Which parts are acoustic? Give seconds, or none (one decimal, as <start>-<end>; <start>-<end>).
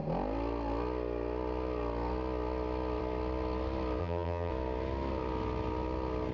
0.0-4.0; 4.5-6.3